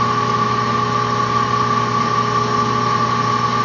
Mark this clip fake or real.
real